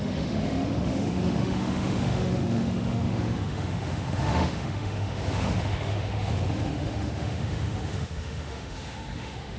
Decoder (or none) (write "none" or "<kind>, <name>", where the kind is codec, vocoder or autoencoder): autoencoder, DAC-VAE